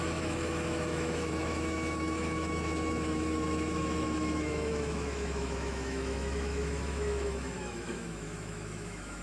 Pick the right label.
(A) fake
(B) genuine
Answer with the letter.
A